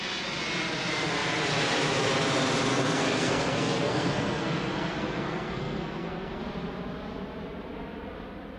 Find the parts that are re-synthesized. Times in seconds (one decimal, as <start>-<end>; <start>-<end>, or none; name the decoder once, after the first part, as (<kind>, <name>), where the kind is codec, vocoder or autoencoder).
2.7-6.4 (codec, SNAC)